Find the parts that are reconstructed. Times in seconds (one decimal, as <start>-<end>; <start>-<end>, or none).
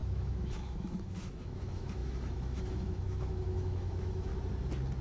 0.0-4.3